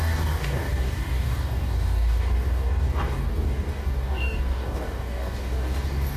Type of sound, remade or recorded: remade